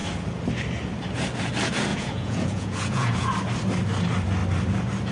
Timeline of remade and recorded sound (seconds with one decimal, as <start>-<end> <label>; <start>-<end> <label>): 0.0-1.9 recorded; 1.9-3.3 remade; 3.3-5.1 recorded